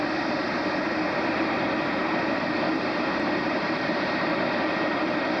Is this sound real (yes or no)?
yes